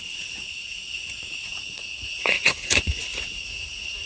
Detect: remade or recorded remade